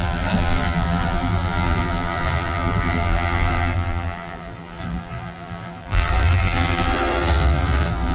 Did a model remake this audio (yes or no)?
yes